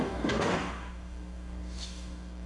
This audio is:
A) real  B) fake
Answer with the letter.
B